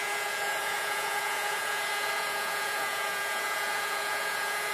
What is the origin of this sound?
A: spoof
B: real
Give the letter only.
A